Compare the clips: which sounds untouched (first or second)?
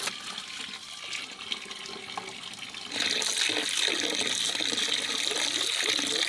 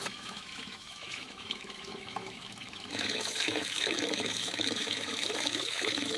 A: first